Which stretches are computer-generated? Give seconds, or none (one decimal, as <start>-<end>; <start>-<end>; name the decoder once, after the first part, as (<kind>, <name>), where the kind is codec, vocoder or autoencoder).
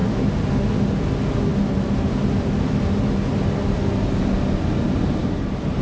none